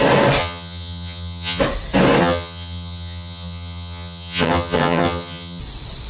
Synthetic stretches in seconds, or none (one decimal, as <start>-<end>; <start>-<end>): 0.4-1.6; 2.2-5.6